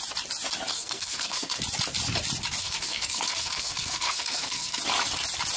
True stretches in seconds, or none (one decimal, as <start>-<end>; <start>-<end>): 0.0-0.7; 1.6-2.6; 4.8-5.6